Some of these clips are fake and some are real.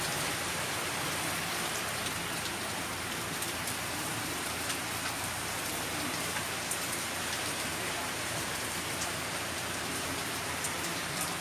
fake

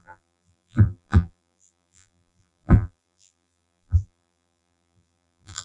fake